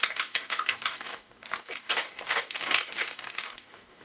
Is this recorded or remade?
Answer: remade